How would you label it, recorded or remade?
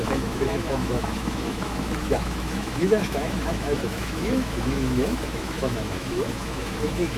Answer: remade